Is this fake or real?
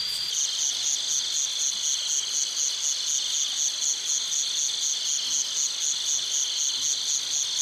real